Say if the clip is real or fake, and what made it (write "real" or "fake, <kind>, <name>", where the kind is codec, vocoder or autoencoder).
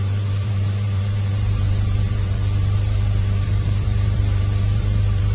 fake, vocoder, BigVGAN v2